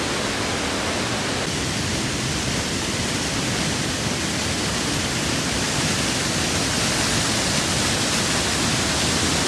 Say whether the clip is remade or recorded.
recorded